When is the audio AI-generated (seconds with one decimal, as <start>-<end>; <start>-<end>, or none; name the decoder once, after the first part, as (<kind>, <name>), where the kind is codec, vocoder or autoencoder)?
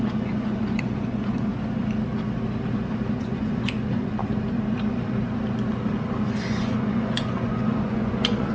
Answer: 0.0-1.5 (vocoder, Vocos); 3.2-4.2; 6.4-8.5